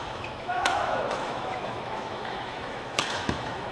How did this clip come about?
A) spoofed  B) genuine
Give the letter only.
A